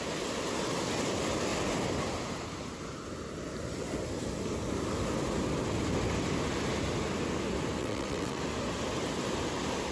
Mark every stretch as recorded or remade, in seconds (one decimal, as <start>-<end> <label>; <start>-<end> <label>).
0.0-7.8 recorded; 7.8-8.4 remade; 8.4-9.9 recorded